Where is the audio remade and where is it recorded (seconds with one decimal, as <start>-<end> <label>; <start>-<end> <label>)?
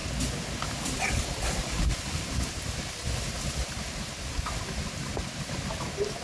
0.0-6.2 recorded